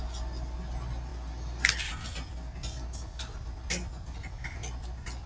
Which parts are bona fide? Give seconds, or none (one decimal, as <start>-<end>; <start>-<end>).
0.0-5.3